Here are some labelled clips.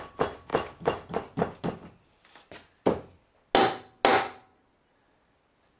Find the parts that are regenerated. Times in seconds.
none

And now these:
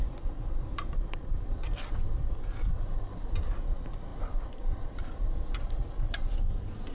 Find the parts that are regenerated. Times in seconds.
0.0-3.1 (vocoder, BigVGAN v2); 3.6-6.9